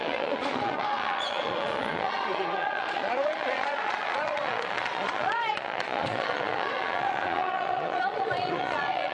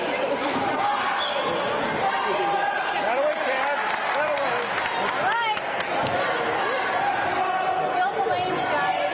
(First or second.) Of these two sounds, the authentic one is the second